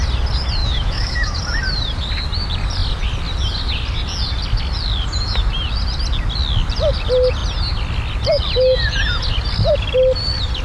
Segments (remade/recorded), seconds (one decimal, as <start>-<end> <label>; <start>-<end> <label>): 0.0-0.6 recorded; 0.6-1.4 remade; 1.4-10.6 recorded